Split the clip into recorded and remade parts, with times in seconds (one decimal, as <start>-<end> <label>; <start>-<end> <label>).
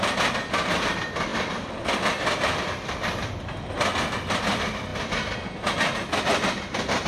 0.0-1.3 recorded; 1.3-2.9 remade; 2.9-7.1 recorded